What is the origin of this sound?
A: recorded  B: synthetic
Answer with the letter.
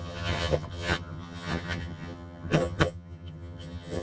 B